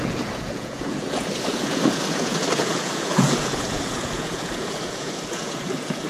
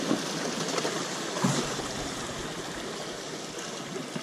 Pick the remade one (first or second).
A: first